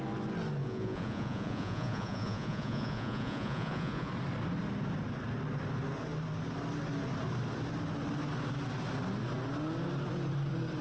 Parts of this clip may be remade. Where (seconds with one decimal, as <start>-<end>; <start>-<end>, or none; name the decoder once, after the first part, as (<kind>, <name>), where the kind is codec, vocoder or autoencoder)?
0.6-4.1 (vocoder, Vocos)